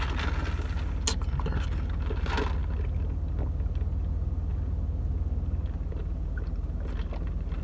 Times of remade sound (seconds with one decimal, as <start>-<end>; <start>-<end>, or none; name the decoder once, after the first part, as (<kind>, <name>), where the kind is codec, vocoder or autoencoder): none